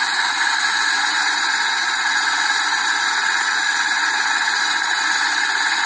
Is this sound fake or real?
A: real